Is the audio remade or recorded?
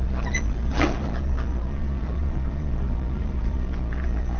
remade